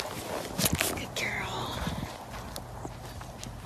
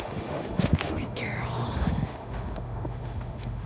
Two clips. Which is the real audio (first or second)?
first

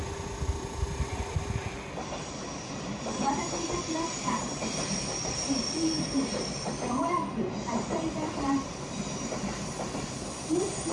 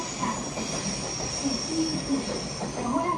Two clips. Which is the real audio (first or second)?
second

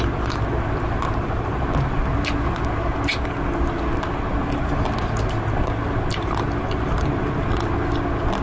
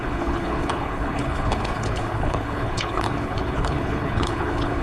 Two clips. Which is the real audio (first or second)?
first